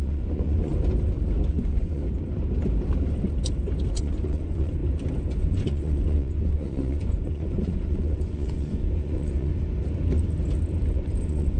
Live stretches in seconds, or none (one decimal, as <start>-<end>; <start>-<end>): 0.7-1.5; 2.0-3.9; 4.8-5.4; 9.5-10.9